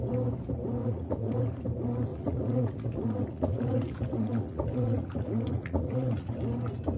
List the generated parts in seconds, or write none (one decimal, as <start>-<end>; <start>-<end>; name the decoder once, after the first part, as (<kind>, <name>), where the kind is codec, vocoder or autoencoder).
0.8-1.4 (vocoder, Vocos); 2.1-6.3